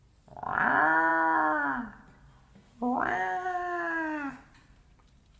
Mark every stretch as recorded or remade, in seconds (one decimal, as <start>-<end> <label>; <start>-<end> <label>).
0.0-5.4 recorded